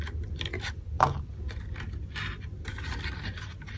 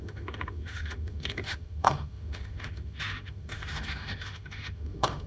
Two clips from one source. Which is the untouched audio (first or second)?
first